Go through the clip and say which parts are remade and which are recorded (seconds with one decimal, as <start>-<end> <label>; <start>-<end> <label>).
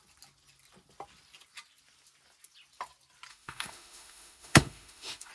0.0-3.3 recorded; 3.3-5.3 remade